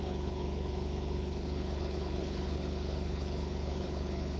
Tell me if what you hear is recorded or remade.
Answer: remade